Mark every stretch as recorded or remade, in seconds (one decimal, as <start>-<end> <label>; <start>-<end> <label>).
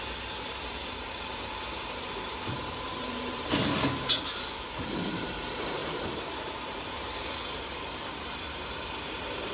0.0-1.6 remade; 1.6-2.2 recorded; 2.2-3.7 remade; 3.7-4.9 recorded; 4.9-9.5 remade